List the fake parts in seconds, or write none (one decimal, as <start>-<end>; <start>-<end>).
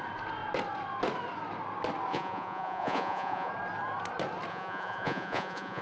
2.1-3.5; 4.5-5.8